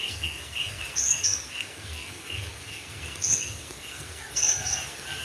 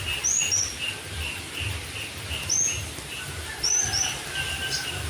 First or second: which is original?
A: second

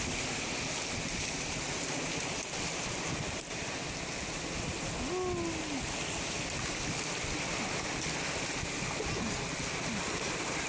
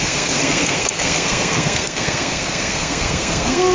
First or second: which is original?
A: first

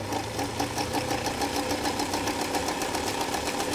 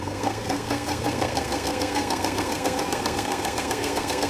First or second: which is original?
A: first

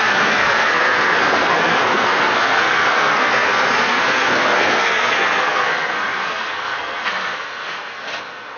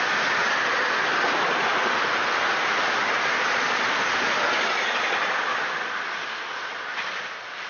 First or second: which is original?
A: second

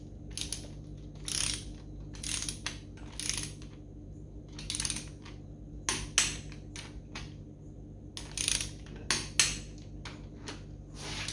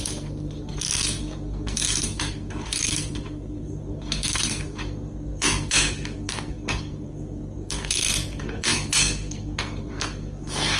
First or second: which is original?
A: first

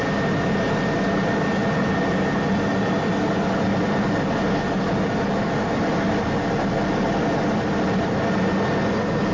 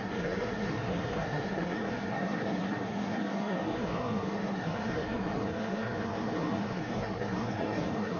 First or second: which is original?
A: first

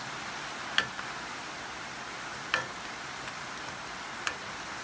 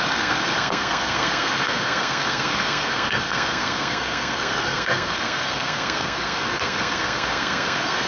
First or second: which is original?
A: first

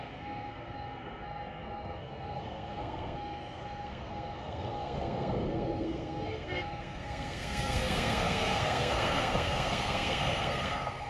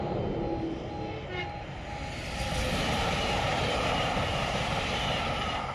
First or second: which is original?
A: second